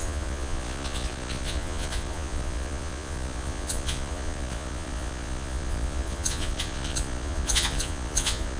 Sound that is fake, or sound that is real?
fake